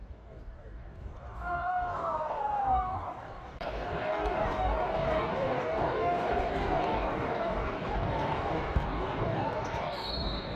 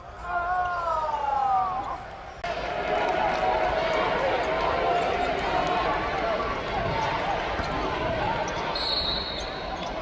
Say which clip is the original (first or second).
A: second